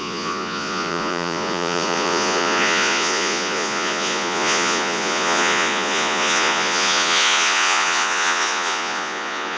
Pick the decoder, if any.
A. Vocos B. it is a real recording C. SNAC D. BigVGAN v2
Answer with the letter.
A